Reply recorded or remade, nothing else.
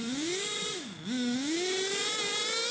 recorded